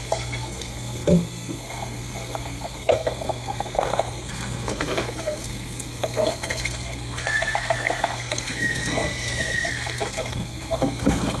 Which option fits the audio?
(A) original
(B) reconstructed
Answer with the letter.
B